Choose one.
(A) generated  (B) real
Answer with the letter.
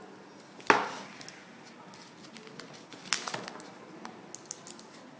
B